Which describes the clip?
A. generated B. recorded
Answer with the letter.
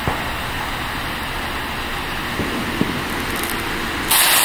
B